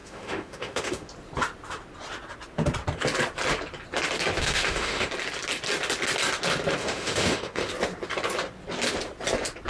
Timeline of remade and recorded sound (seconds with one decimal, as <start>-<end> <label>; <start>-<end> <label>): 0.0-1.1 remade; 1.1-4.4 recorded; 4.4-5.1 remade; 5.1-6.8 recorded; 6.8-7.7 remade; 7.7-9.7 recorded